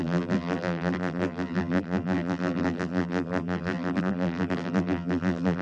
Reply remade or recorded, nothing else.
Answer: remade